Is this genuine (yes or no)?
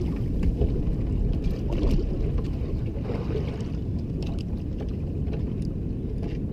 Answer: yes